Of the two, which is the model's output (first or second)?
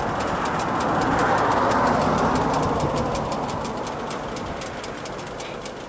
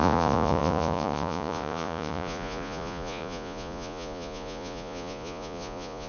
second